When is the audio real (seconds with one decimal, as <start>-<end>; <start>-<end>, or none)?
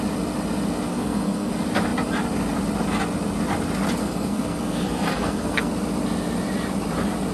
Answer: 0.0-0.9; 1.5-4.0; 5.7-7.3